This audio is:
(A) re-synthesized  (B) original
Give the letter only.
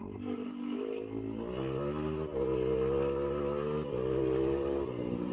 B